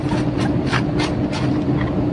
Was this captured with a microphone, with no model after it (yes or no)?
yes